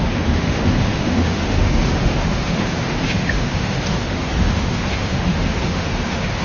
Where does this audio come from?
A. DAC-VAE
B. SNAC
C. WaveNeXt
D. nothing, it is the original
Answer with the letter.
A